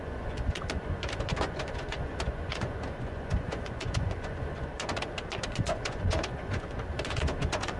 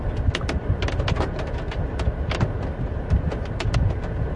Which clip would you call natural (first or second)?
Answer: second